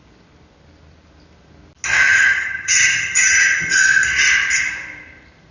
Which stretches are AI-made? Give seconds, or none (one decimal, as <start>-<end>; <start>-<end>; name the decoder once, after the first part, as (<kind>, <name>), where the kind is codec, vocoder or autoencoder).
2.1-3.7 (vocoder, HiFi-GAN)